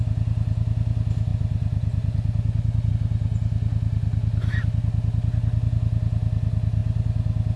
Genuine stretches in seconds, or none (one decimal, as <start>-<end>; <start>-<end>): 0.0-7.6